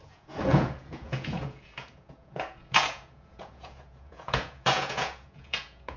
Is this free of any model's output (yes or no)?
no